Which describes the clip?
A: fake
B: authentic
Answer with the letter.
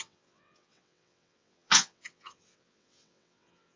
A